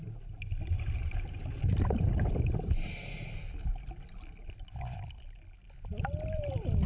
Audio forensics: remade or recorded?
recorded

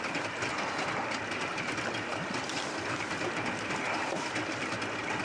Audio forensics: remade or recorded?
recorded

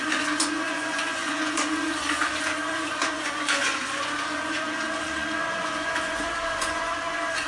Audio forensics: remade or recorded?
remade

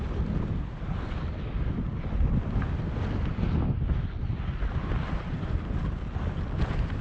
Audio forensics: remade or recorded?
recorded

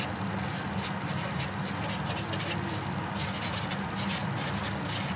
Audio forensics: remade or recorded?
recorded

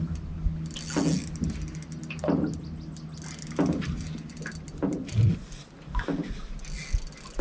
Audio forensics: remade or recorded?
recorded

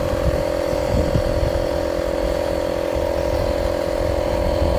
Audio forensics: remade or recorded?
recorded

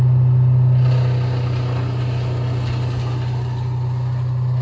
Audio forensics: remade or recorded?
recorded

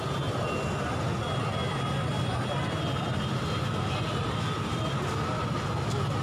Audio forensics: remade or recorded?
recorded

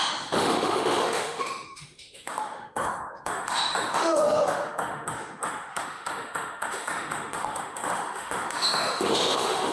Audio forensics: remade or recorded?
remade